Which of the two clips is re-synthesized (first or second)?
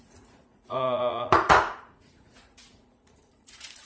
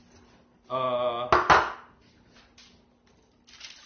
first